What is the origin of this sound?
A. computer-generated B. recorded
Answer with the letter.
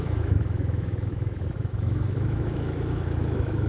A